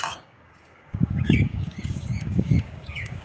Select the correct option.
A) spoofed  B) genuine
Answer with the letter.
A